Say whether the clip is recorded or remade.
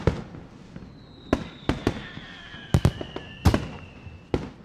recorded